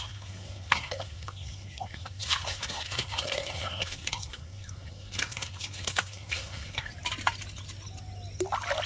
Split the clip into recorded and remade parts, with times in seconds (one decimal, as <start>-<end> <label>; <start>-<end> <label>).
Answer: 0.0-6.9 remade; 6.9-8.9 recorded

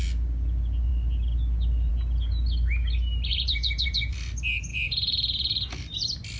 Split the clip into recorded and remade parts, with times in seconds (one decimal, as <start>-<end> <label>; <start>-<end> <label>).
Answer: 0.0-3.3 recorded; 3.3-4.1 remade; 4.1-4.7 recorded; 4.7-5.8 remade; 5.8-6.4 recorded

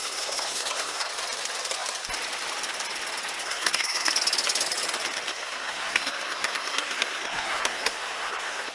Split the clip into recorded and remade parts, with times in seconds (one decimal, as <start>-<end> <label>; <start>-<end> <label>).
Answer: 0.0-1.1 remade; 1.1-3.4 recorded; 3.4-4.1 remade; 4.1-5.3 recorded; 5.3-8.7 remade

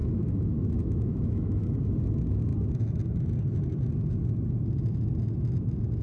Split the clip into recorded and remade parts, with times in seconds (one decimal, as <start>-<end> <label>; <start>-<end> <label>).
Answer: 0.0-1.6 remade; 1.6-6.0 recorded

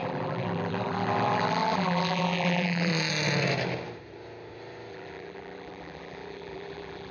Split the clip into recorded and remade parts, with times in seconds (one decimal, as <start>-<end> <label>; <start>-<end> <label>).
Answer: 0.0-2.9 remade; 2.9-4.9 recorded; 4.9-7.1 remade